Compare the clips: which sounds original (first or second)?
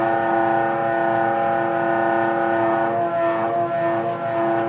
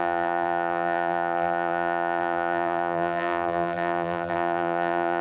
first